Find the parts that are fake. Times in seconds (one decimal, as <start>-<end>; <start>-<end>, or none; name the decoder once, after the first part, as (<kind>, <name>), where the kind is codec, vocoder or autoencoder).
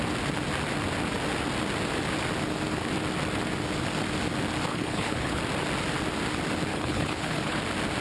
4.7-5.4 (codec, HILCodec); 6.7-7.6